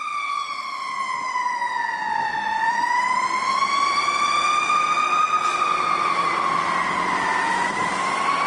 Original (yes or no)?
yes